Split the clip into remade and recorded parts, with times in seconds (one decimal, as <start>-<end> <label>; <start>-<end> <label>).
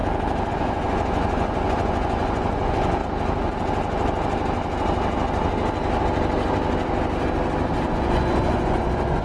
0.0-0.5 recorded; 0.5-3.0 remade; 3.0-7.9 recorded; 7.9-9.2 remade